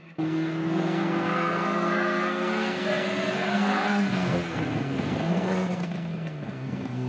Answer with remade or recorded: remade